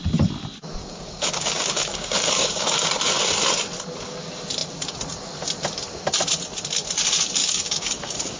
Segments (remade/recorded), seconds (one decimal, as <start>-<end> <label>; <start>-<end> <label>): 0.0-0.8 recorded; 0.8-2.9 remade; 2.9-7.4 recorded; 7.4-8.4 remade

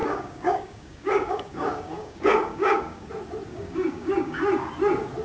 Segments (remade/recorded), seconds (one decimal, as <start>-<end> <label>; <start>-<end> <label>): 0.0-3.1 remade; 3.1-3.5 recorded; 3.5-4.4 remade; 4.4-5.2 recorded

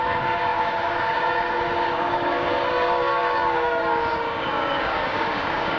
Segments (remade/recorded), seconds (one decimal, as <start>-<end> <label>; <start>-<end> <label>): 0.0-5.8 remade

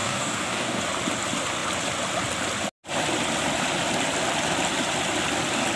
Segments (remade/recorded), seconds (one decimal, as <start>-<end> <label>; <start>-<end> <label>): 0.0-0.8 remade; 0.8-5.8 recorded